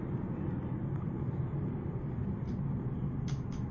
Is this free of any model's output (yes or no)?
yes